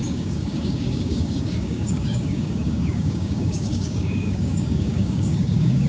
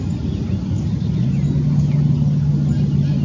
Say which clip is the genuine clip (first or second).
second